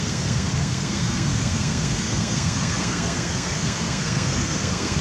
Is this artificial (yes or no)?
yes